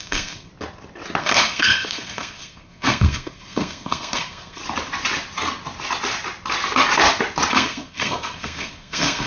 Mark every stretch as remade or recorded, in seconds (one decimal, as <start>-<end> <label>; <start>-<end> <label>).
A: 0.0-0.5 remade; 0.5-1.2 recorded; 1.2-4.6 remade; 4.6-7.5 recorded; 7.5-9.3 remade